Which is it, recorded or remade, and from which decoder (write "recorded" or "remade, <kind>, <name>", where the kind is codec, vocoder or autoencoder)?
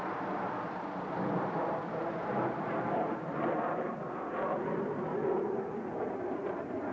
recorded